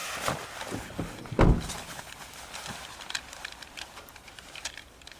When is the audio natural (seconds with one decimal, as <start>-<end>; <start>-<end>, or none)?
0.0-3.1

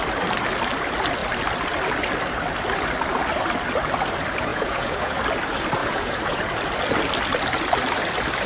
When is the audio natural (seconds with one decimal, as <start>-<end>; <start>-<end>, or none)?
0.0-4.5; 5.2-5.8; 6.4-8.5